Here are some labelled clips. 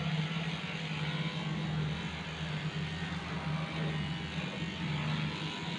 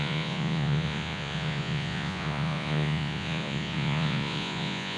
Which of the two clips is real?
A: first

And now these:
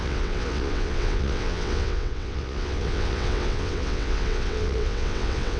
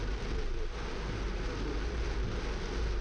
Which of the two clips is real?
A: second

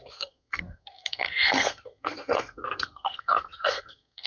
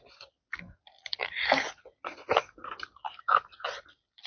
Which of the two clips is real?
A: second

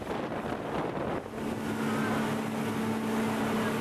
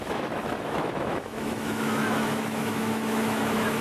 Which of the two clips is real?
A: first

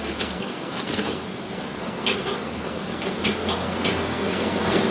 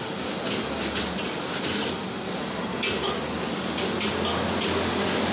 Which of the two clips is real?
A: second